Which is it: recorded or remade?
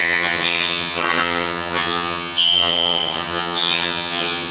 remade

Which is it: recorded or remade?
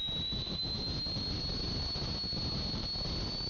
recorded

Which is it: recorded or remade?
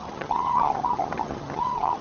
remade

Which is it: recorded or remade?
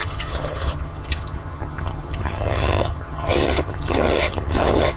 remade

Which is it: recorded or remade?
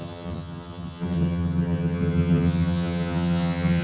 remade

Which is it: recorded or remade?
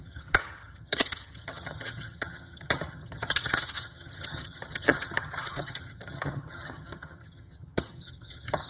remade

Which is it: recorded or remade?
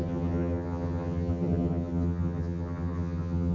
remade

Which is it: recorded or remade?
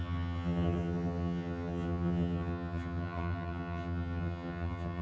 remade